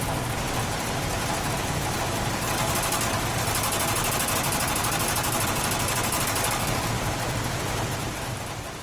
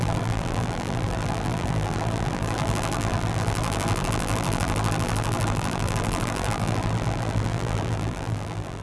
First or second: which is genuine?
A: first